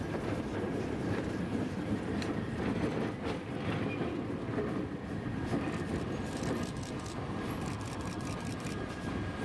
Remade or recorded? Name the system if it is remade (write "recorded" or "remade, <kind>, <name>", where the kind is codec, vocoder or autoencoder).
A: remade, vocoder, BigVGAN v2